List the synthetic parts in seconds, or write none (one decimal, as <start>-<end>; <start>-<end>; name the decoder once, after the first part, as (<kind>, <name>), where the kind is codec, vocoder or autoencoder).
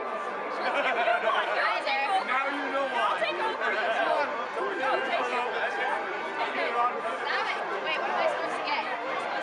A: none